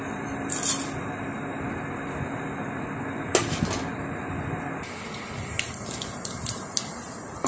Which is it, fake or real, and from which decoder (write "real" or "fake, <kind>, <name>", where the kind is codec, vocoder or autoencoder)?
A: real